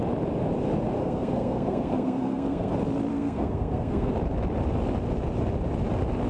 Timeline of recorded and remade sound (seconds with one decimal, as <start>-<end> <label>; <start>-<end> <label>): 0.0-1.0 recorded; 1.0-2.7 remade; 2.7-3.1 recorded; 3.1-4.1 remade; 4.1-6.3 recorded